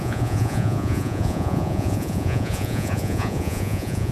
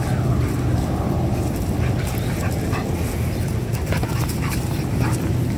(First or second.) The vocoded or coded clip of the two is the first